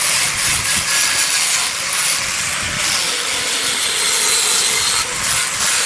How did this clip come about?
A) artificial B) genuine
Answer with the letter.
B